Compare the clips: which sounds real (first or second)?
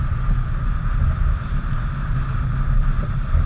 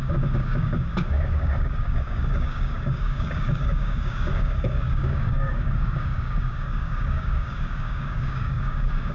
first